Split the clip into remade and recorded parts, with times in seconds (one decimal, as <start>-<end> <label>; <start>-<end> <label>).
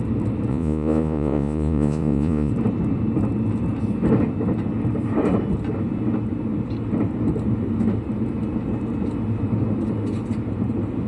0.0-0.5 recorded; 0.5-2.5 remade; 2.5-11.1 recorded